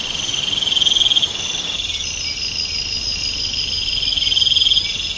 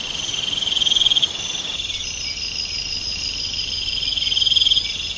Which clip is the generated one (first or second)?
second